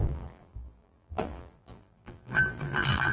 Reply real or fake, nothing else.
fake